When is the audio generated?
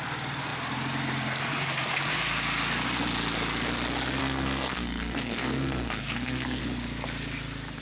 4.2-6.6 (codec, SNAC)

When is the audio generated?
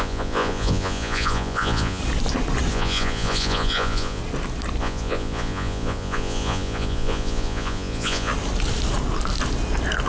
0.0-2.0 (vocoder, Vocos); 2.7-4.2; 4.8-8.3